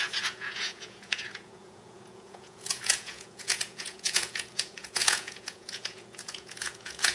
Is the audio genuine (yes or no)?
no